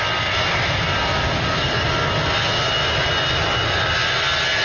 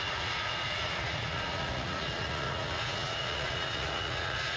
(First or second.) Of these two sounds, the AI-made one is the second